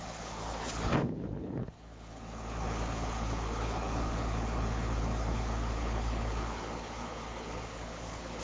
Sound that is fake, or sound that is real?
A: fake